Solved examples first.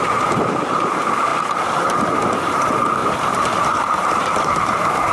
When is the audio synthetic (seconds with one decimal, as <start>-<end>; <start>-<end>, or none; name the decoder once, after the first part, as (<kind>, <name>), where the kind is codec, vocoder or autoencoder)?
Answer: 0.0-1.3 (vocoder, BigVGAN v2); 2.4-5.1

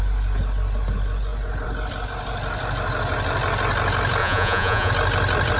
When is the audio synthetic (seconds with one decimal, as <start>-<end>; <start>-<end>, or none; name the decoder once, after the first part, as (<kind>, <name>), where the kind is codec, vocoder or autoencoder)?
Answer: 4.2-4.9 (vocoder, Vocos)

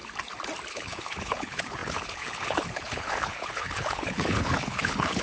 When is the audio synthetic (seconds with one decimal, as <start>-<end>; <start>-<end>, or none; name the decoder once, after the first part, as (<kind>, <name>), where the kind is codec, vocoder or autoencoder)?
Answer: 0.7-5.2 (codec, HILCodec)